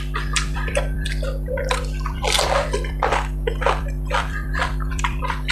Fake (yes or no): yes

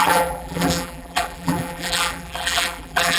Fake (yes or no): yes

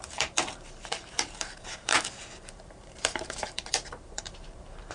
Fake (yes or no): yes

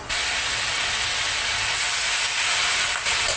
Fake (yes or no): no